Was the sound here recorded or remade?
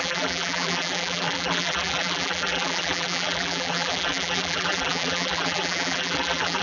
remade